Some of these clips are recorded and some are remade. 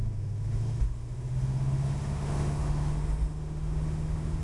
remade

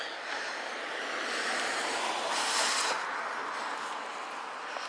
recorded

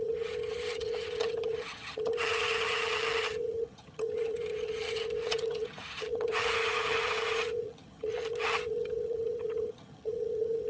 remade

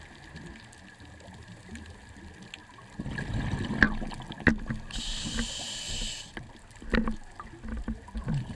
recorded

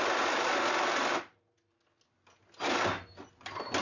recorded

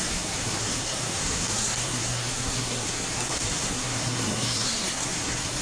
remade